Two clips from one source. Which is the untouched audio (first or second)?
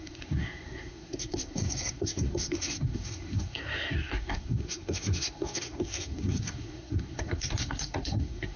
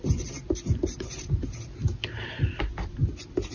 second